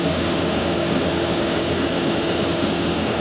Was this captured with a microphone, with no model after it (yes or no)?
no